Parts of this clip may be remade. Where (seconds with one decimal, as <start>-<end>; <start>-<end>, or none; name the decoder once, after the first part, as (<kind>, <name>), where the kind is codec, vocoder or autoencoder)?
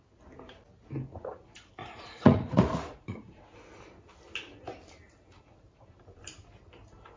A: 1.8-3.4 (vocoder, Vocos)